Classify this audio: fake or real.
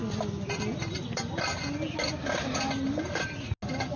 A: real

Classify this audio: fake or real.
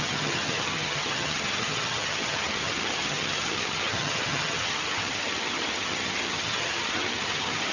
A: fake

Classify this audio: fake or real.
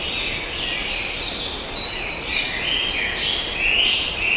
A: real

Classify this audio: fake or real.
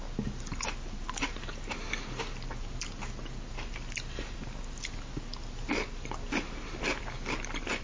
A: real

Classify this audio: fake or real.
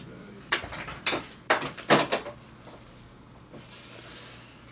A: real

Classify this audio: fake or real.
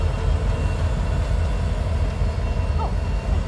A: real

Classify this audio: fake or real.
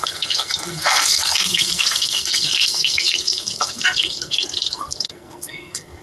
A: fake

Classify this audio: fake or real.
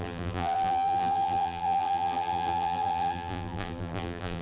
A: fake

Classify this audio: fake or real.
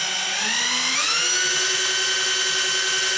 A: real